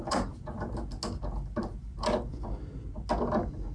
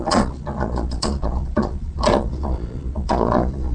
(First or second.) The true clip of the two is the first